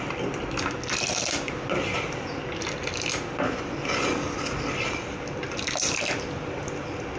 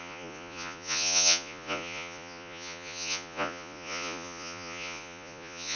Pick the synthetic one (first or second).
second